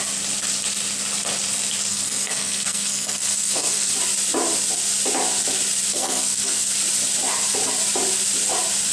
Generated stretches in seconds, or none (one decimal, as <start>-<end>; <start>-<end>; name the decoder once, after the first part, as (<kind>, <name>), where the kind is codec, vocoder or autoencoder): 1.9-3.9 (codec, SNAC); 5.9-6.7